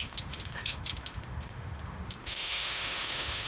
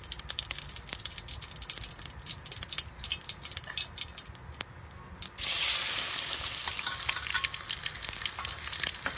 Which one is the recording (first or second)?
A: second